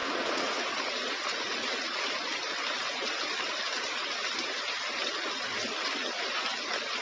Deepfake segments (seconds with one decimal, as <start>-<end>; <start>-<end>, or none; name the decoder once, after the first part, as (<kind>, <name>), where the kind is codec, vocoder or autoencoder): 0.0-2.1 (vocoder, Vocos)